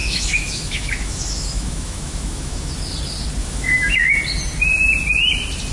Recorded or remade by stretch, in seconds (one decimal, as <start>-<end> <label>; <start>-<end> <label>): 0.0-2.7 remade; 2.7-3.4 recorded; 3.4-4.1 remade; 4.1-5.7 recorded